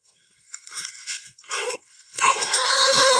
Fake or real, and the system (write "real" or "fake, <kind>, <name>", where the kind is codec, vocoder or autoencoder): fake, codec, SNAC